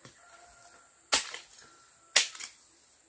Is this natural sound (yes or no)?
yes